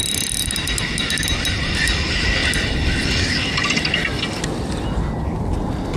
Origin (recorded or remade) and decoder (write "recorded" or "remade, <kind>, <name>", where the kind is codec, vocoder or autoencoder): recorded